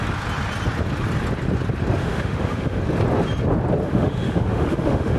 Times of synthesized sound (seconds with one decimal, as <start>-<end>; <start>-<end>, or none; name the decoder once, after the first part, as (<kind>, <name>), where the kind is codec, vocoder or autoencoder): 2.0-2.8 (autoencoder, DAC-VAE); 3.8-5.2